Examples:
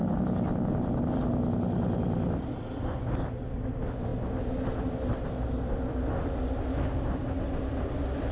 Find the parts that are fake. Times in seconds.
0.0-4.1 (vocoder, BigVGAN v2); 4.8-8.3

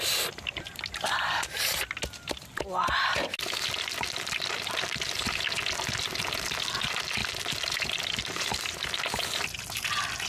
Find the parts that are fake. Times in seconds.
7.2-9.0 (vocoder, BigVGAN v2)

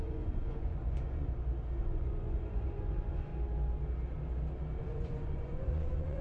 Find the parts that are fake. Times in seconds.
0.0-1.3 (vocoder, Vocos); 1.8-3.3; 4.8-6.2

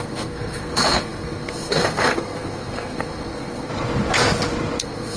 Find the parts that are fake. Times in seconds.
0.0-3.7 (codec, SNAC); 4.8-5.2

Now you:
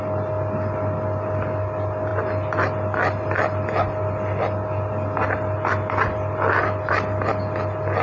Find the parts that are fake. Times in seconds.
none

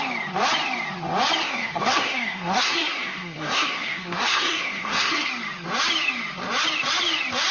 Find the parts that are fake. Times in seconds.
1.4-5.3 (codec, SNAC)

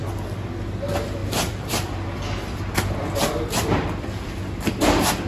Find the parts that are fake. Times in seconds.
1.2-4.4 (vocoder, BigVGAN v2)

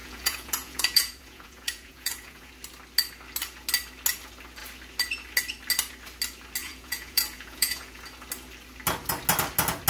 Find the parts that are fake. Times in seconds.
0.0-2.5 (vocoder, Vocos); 6.6-8.0